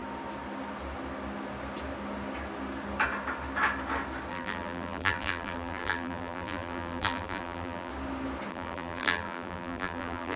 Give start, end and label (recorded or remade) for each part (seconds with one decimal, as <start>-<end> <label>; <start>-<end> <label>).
0.0-4.3 recorded; 4.3-7.9 remade; 7.9-8.5 recorded; 8.5-10.4 remade